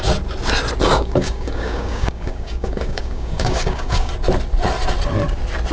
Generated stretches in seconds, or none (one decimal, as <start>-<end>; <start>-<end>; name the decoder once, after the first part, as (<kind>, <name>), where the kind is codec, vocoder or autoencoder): 0.9-4.1 (codec, DAC)